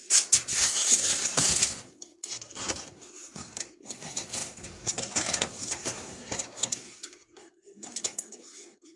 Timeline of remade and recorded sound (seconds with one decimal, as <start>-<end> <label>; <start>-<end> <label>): 0.0-9.0 remade